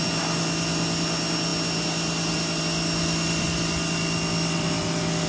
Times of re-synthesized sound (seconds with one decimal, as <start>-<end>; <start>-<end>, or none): none